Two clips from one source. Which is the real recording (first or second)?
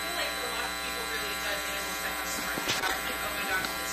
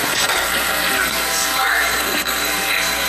first